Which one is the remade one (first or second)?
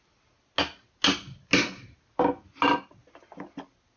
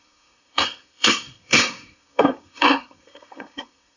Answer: second